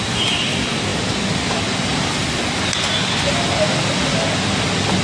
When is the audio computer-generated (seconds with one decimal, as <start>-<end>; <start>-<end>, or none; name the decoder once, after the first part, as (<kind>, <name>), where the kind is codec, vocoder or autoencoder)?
none